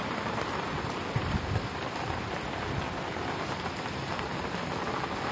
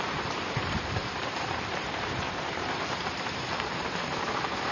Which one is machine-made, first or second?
second